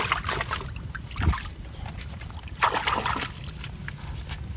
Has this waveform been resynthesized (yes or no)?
no